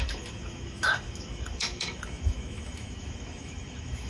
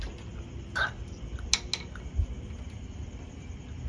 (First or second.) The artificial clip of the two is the first